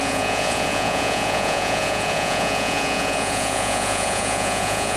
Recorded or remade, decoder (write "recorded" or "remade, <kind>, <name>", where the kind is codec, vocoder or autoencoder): remade, vocoder, Vocos